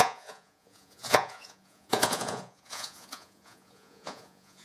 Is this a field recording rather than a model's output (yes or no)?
no